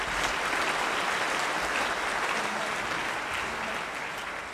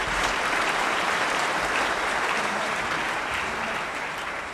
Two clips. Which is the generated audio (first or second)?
second